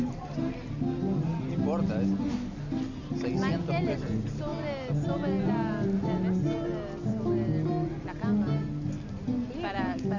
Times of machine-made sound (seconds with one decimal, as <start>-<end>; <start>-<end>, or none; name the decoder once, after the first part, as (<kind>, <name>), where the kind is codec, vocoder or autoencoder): none

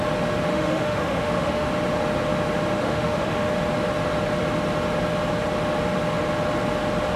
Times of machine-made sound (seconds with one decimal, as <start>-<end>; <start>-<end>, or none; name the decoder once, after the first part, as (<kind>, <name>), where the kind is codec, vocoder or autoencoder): 0.5-1.7 (autoencoder, DAC-VAE); 2.8-3.5

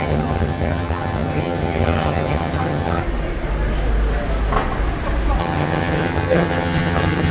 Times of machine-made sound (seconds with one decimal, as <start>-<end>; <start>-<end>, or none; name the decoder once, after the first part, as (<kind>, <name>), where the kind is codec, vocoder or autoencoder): 0.0-3.0 (vocoder, HiFi-GAN); 5.4-7.3